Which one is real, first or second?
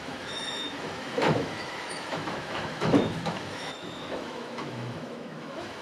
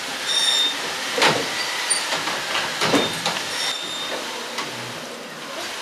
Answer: second